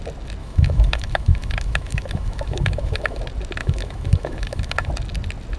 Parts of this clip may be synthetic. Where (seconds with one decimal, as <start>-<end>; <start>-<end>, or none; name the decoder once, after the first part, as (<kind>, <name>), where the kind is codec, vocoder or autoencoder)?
0.4-3.2 (autoencoder, DAC-VAE); 3.6-4.9

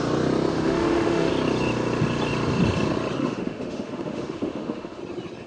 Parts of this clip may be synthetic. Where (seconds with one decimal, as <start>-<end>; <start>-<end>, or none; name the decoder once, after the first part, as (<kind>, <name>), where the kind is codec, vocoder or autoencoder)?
0.5-1.3 (autoencoder, DAC-VAE); 3.2-5.0

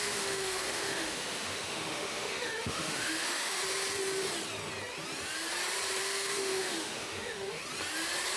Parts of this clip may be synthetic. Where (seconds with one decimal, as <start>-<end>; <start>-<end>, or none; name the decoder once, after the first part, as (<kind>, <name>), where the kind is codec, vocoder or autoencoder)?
0.0-3.6 (autoencoder, DAC-VAE); 6.0-7.6

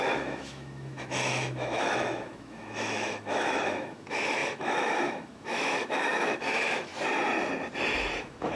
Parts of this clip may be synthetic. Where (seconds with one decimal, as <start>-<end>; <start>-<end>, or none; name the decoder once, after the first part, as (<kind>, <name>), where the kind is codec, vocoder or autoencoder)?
0.0-6.9 (autoencoder, DAC-VAE); 8.2-8.6

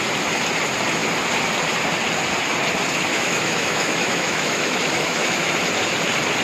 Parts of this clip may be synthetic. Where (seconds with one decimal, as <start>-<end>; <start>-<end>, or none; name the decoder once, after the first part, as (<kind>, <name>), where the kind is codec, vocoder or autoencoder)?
3.1-5.5 (autoencoder, DAC-VAE)

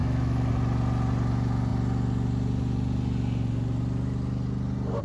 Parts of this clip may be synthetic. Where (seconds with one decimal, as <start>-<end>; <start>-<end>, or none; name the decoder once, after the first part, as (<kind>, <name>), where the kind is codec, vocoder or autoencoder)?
0.0-0.5 (autoencoder, DAC-VAE)